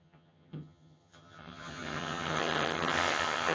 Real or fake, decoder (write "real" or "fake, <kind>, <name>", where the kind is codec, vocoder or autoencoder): fake, vocoder, HiFi-GAN